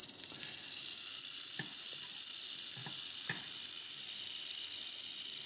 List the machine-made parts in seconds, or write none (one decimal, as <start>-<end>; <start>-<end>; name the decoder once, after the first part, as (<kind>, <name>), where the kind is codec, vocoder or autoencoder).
none